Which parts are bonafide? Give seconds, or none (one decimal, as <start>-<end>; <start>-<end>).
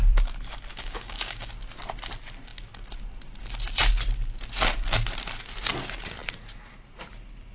0.0-0.7; 1.5-7.5